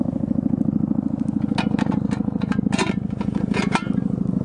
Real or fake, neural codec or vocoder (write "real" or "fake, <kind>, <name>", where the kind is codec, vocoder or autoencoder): real